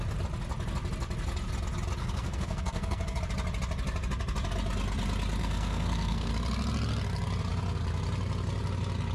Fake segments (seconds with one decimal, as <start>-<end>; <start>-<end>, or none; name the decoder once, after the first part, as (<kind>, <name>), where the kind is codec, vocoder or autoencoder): 2.0-3.2 (codec, SNAC); 5.4-6.3